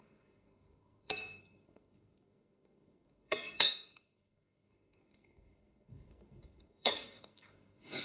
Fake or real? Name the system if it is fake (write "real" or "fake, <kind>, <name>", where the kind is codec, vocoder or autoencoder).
fake, codec, SNAC